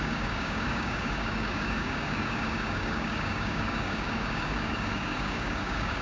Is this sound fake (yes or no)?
yes